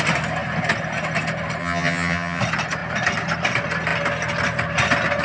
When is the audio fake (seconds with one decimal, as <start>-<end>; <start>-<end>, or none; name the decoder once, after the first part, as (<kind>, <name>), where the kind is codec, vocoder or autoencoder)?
1.6-2.4 (vocoder, HiFi-GAN)